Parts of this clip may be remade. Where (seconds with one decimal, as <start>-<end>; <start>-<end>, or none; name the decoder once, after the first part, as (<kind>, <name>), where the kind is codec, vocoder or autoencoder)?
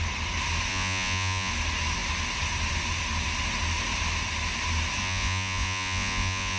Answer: 0.7-1.5 (vocoder, Vocos); 5.0-6.6